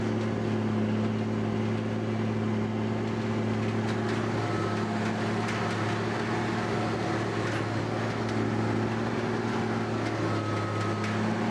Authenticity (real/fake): real